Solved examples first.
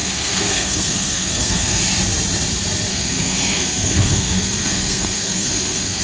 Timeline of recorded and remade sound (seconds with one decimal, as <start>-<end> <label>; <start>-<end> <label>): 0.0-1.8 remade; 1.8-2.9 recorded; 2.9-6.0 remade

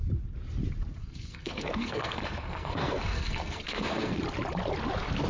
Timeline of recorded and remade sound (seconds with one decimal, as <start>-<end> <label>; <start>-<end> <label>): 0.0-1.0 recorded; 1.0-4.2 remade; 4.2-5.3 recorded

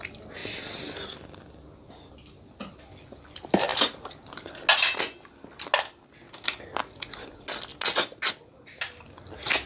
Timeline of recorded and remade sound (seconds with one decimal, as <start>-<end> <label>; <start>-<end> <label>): 0.0-9.7 recorded